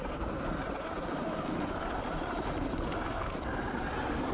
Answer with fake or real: real